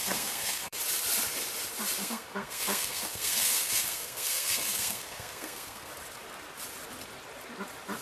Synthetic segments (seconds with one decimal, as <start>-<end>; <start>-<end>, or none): 0.0-0.8; 2.0-5.9